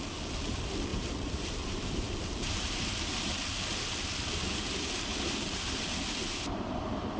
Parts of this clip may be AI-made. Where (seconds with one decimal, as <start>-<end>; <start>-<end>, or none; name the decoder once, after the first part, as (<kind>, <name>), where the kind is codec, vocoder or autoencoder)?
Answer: 0.9-3.1 (vocoder, BigVGAN v2); 5.1-5.7